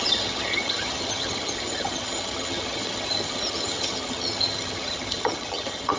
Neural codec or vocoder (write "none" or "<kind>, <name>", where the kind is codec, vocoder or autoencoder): vocoder, HiFi-GAN